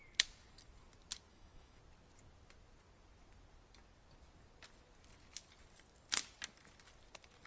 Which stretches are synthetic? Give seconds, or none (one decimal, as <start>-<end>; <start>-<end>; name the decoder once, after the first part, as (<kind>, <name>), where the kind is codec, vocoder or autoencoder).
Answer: 1.3-1.8 (autoencoder, DAC-VAE)